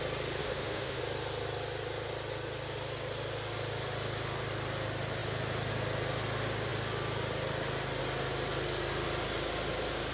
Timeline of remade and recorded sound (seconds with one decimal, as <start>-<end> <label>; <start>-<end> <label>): 0.0-0.4 recorded; 0.4-1.0 remade; 1.0-10.1 recorded